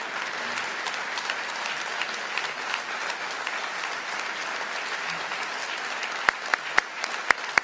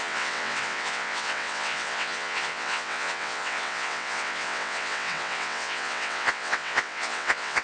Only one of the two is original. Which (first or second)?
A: first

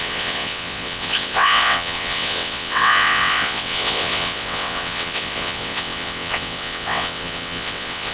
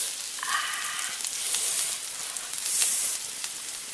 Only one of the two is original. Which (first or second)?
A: second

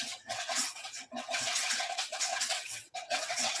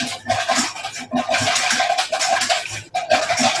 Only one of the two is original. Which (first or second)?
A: second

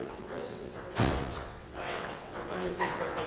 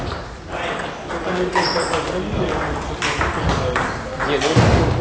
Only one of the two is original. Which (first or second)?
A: second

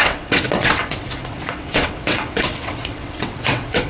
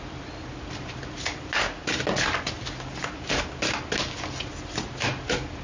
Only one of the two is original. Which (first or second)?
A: second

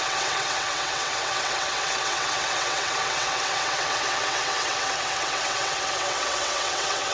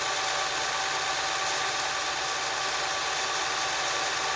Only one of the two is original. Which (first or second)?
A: second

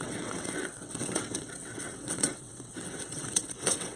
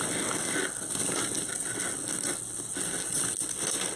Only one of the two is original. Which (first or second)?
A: second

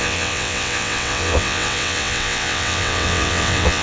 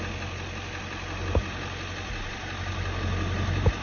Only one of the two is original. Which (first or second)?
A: second